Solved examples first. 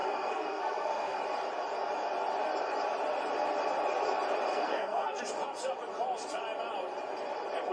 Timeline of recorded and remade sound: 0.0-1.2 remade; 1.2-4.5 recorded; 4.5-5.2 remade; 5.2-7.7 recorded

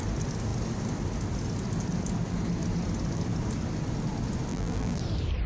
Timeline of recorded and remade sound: 0.0-4.5 recorded; 4.5-5.0 remade; 5.0-5.5 recorded

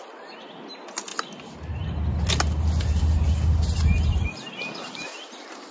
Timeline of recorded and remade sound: 0.0-5.7 recorded